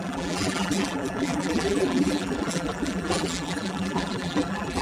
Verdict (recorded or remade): remade